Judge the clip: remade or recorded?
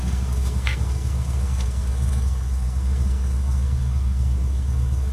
remade